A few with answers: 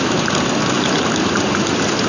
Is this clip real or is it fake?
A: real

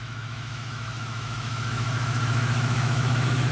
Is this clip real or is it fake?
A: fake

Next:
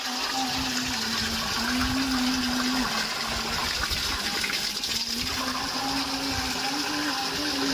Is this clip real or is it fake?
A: real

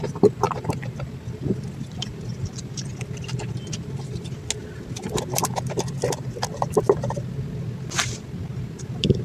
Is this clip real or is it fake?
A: real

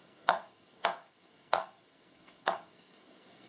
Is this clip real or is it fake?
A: fake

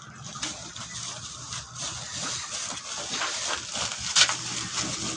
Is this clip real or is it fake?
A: real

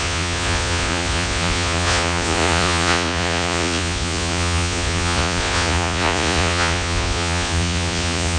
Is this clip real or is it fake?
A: fake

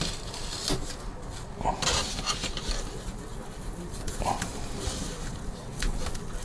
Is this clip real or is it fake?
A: real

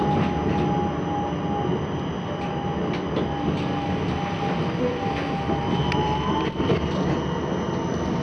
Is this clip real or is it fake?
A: real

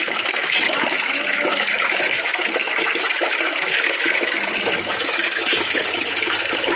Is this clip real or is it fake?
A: fake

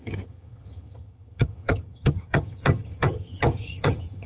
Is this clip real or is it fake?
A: fake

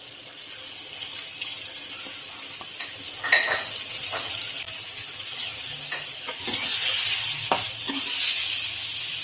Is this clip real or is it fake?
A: real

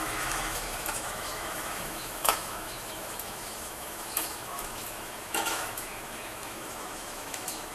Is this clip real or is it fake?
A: fake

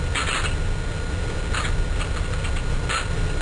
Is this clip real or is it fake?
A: real